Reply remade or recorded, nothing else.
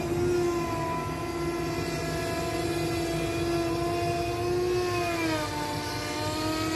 recorded